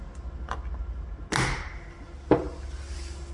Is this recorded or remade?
recorded